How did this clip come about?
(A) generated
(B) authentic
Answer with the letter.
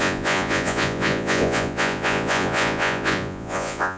A